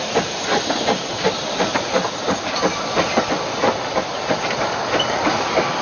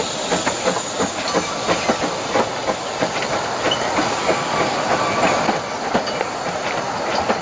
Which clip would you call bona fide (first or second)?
second